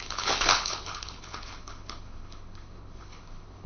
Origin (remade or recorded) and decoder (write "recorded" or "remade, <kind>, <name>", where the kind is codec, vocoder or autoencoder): remade, codec, HILCodec